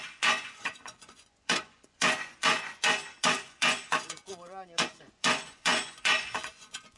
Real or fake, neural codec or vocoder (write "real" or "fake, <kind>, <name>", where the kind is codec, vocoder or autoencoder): fake, vocoder, Vocos